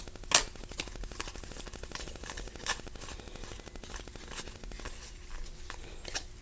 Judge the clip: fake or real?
real